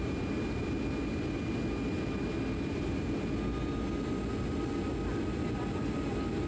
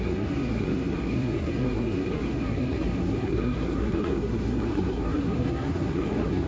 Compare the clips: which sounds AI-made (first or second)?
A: second